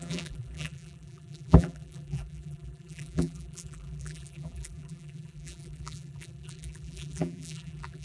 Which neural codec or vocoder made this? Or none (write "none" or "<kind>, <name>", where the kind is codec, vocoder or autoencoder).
vocoder, BigVGAN v2